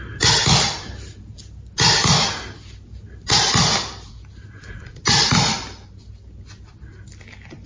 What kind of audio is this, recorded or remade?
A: recorded